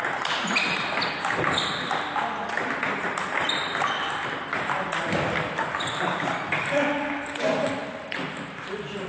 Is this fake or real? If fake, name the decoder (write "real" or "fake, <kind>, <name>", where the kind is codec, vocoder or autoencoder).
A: real